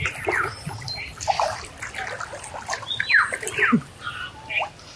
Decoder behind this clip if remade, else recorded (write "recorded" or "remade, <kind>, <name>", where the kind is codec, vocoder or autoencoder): recorded